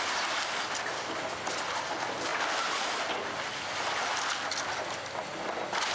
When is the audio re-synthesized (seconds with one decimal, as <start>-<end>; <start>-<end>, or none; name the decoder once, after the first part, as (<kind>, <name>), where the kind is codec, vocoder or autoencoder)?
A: none